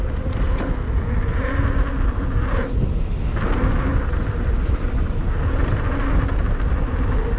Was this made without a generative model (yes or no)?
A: yes